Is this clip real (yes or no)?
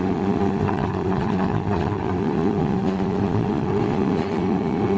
no